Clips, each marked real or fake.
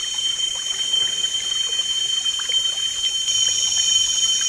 real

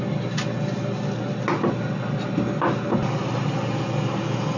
real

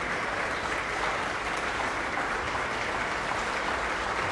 real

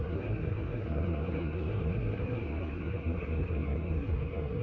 fake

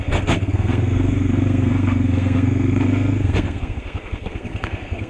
fake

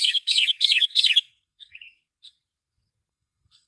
fake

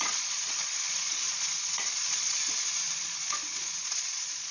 fake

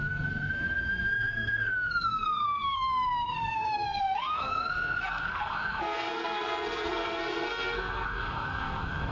fake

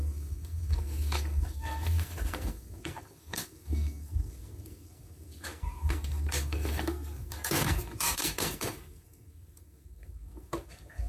fake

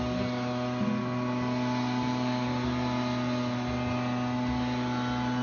real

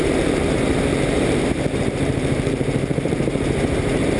fake